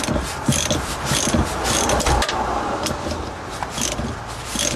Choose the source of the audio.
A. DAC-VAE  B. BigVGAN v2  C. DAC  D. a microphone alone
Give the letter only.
D